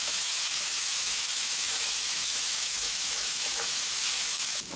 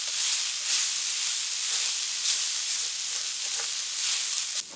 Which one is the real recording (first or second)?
second